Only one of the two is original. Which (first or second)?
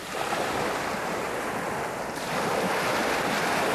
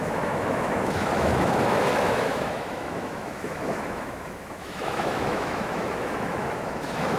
first